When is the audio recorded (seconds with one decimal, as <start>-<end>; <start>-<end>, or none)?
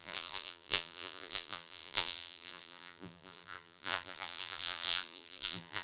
none